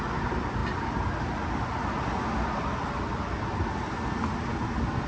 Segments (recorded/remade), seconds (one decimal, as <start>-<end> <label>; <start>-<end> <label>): 0.0-5.1 recorded